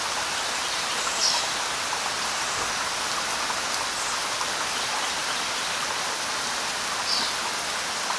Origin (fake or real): real